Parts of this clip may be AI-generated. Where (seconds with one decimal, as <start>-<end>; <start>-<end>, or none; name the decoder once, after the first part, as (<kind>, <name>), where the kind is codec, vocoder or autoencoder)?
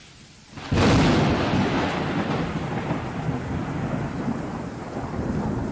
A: none